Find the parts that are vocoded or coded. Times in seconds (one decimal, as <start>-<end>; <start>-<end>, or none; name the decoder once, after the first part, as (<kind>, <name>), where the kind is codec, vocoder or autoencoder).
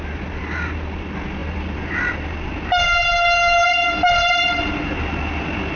none